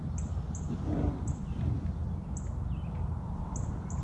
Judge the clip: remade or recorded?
recorded